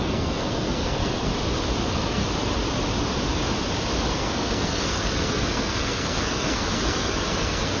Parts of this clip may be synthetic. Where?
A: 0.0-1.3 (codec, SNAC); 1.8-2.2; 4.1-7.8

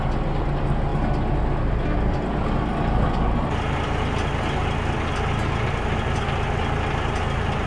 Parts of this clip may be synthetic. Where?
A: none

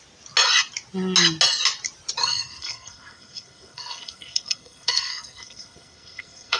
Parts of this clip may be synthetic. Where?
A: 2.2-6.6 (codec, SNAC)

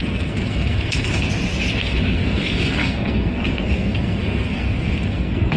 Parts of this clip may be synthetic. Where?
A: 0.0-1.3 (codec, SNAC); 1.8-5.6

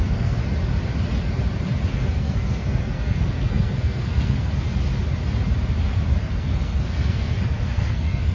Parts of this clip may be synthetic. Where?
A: 0.0-0.4 (codec, SNAC); 2.1-4.5; 6.2-8.3

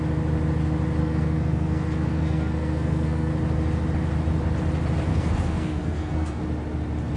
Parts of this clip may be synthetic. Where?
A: 1.0-3.3 (codec, SNAC); 5.1-6.4

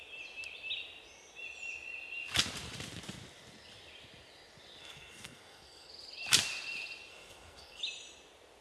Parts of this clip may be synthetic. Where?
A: 4.8-5.9 (codec, SNAC); 7.1-7.8

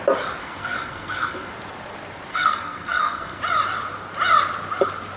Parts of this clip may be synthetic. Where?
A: 0.4-1.5 (codec, SNAC); 2.3-3.4